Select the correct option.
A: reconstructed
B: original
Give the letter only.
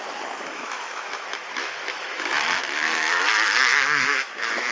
A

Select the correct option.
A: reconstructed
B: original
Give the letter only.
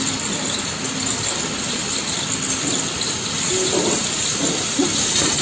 B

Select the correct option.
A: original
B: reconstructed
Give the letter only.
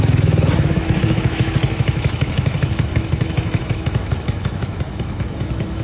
B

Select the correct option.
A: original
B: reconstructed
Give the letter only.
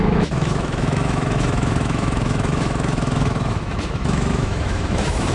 B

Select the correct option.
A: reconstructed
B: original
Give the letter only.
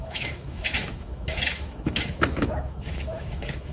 A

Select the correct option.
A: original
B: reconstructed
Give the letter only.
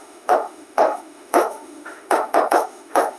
B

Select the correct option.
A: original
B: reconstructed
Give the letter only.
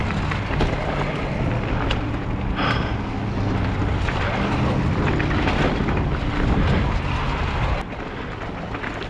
A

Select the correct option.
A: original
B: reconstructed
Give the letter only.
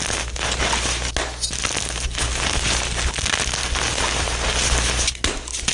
A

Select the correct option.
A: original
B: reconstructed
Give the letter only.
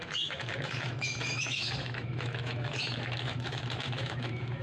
B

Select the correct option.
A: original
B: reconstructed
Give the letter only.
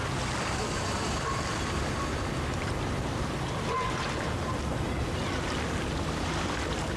A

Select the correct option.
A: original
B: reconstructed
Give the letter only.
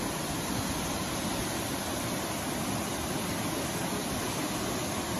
A